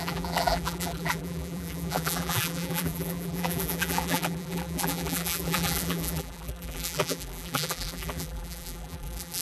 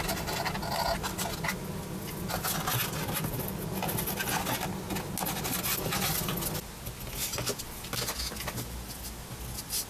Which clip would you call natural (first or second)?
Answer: second